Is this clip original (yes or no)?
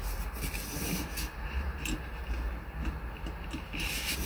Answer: yes